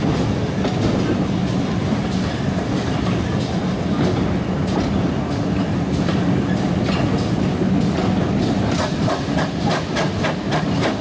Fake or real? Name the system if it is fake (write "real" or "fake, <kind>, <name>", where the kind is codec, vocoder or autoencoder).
real